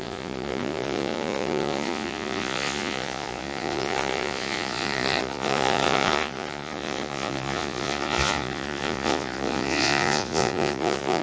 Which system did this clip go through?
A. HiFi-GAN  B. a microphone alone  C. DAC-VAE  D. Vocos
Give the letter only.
D